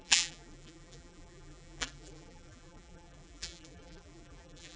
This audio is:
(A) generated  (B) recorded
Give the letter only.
A